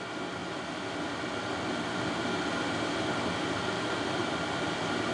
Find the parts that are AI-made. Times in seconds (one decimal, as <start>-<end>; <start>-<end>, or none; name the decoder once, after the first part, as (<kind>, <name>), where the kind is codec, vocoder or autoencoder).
none